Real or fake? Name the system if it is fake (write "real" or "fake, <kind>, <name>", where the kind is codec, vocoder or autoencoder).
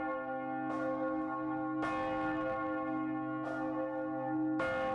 real